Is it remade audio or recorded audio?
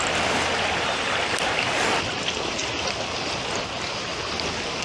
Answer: recorded